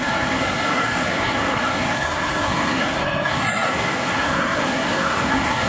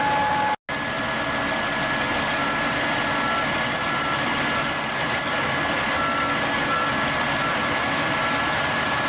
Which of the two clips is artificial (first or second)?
first